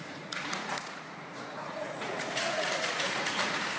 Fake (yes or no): yes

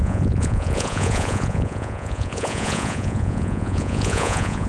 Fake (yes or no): yes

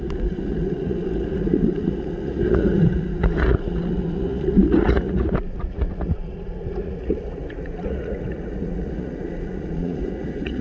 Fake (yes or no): yes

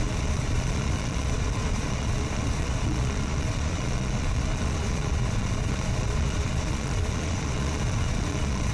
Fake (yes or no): yes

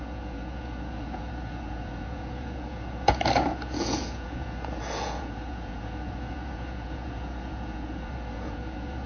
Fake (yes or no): yes